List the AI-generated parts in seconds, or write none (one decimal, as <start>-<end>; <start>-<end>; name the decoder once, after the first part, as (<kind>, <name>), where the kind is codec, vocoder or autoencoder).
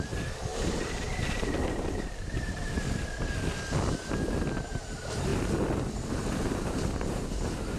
0.5-2.7 (vocoder, BigVGAN v2)